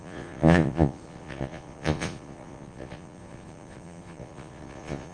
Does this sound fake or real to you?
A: fake